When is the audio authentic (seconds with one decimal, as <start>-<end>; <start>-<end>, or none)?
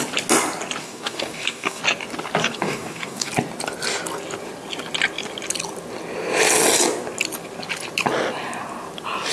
0.0-0.8; 1.8-2.4; 3.3-9.3